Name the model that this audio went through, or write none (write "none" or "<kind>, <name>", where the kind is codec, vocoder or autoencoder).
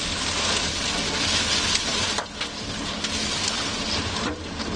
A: none